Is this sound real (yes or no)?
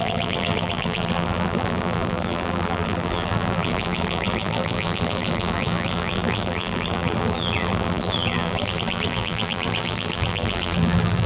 no